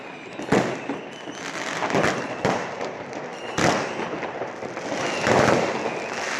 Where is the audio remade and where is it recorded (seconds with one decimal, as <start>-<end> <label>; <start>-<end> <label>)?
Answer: 0.0-3.3 remade; 3.3-3.8 recorded; 3.8-6.4 remade